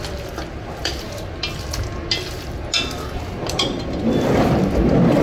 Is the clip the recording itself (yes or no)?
yes